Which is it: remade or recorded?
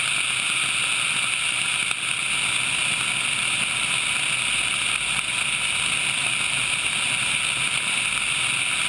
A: recorded